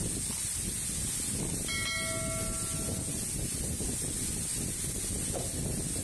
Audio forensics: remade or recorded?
recorded